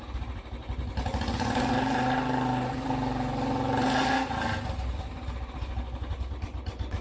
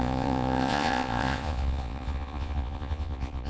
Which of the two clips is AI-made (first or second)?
second